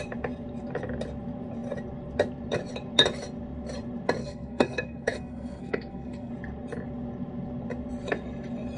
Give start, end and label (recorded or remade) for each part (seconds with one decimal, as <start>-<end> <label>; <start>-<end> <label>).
0.0-4.2 recorded; 4.2-6.3 remade; 6.3-8.8 recorded